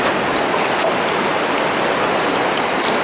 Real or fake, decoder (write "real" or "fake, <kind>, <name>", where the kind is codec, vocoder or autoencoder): real